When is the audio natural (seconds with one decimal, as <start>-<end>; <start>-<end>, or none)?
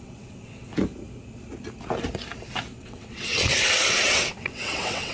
0.7-2.7